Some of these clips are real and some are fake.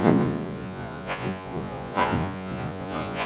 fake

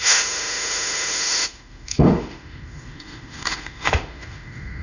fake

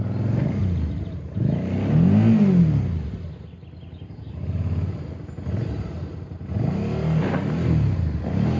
real